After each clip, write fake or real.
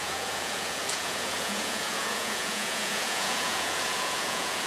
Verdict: fake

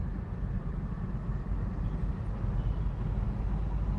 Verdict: real